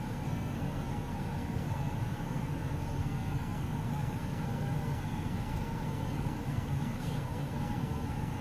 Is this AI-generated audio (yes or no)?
yes